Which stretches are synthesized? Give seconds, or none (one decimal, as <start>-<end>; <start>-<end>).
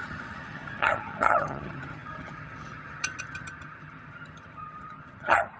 0.0-5.6